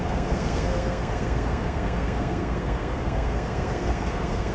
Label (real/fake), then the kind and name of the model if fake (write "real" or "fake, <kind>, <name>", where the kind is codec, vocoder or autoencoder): fake, codec, SNAC